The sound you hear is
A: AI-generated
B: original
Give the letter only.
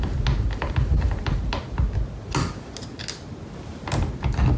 B